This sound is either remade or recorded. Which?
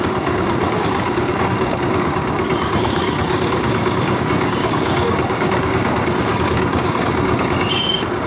remade